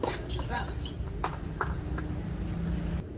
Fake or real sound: real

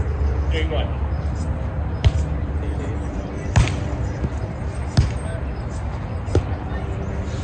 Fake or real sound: real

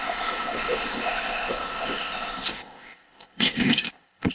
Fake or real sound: fake